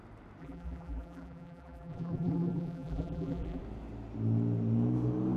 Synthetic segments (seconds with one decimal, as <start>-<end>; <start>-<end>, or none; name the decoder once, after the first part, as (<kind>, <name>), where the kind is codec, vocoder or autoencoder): 0.4-3.6 (vocoder, BigVGAN v2)